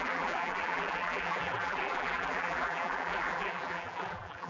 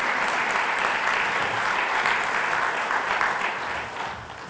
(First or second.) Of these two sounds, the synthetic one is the first